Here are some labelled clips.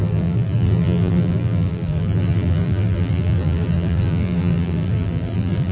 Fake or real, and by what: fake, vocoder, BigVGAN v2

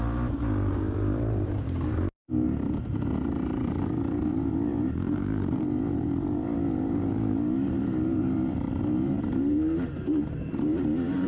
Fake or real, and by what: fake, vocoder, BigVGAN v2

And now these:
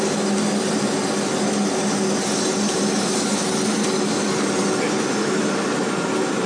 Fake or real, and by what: real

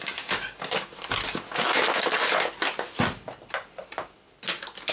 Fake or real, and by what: real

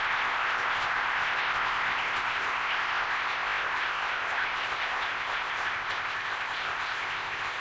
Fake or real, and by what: fake, codec, ZipCodec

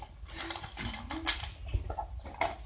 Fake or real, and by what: real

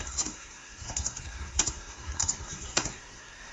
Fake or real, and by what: fake, codec, SNAC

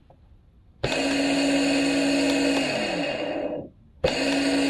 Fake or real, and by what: real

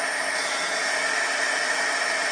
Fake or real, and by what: real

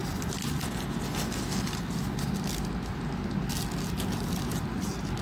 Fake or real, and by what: real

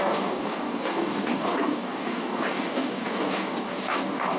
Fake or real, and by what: fake, codec, DAC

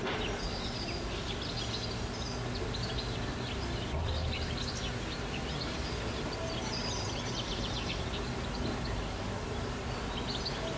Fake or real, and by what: real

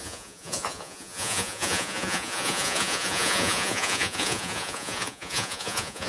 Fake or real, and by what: fake, vocoder, Vocos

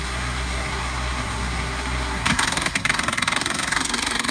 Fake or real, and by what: fake, codec, SNAC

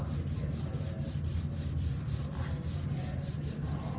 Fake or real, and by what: real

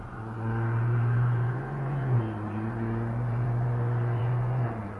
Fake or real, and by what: fake, vocoder, Vocos